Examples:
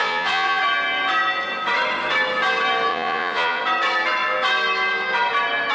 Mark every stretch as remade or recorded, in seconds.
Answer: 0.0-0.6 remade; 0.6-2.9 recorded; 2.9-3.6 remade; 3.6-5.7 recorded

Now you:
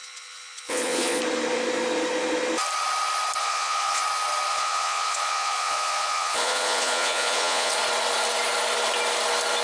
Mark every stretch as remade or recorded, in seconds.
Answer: 0.0-1.2 remade; 1.2-3.4 recorded; 3.4-4.0 remade; 4.0-4.5 recorded; 4.5-7.7 remade; 7.7-9.6 recorded